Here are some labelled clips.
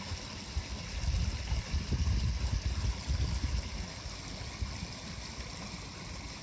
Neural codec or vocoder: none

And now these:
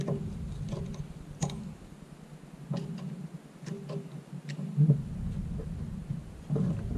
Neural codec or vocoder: none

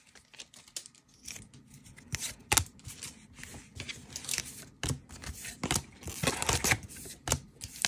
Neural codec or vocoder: none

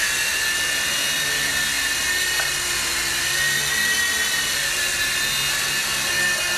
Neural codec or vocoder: none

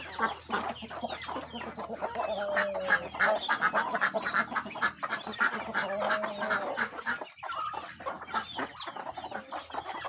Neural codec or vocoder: none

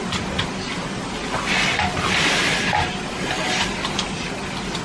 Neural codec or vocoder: none